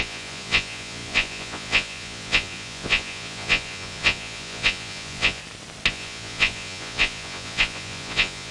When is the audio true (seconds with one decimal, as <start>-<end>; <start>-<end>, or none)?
5.4-5.9